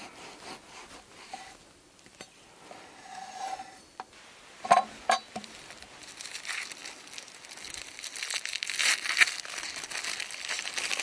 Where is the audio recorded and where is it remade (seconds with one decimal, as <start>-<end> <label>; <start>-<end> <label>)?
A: 0.0-11.0 recorded

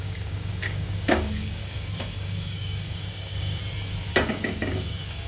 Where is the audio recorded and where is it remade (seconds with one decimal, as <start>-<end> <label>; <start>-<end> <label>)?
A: 0.0-3.6 remade; 3.6-4.3 recorded; 4.3-5.3 remade

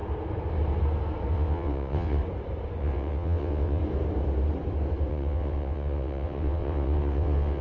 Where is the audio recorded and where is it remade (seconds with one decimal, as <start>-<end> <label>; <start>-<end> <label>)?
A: 0.0-1.3 recorded; 1.3-2.2 remade; 2.2-2.8 recorded; 2.8-3.8 remade; 3.8-5.1 recorded; 5.1-7.6 remade

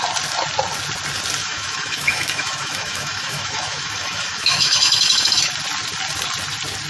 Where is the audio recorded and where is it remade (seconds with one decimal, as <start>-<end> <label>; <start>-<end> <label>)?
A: 0.0-1.4 recorded; 1.4-5.5 remade; 5.5-6.9 recorded

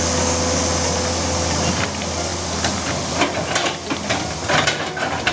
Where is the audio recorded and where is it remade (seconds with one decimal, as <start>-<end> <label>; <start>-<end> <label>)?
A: 0.0-5.3 recorded